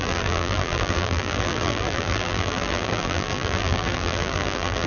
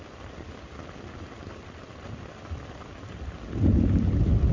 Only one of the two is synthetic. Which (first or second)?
first